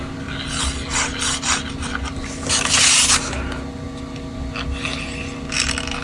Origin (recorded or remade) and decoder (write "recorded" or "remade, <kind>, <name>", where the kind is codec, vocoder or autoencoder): recorded